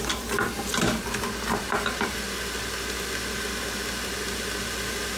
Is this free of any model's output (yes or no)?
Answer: yes